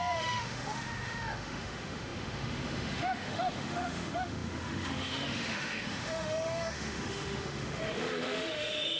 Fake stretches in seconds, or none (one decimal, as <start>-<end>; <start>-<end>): 0.0-9.0